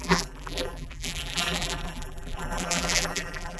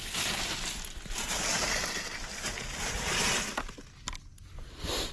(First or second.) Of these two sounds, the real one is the second